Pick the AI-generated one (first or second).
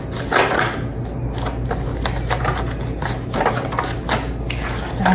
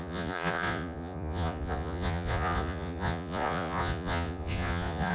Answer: second